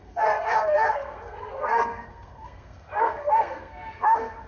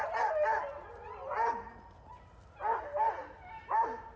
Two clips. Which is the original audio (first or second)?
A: second